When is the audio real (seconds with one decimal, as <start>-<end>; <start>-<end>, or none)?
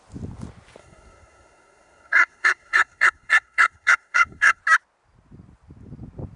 0.0-0.8; 4.6-6.4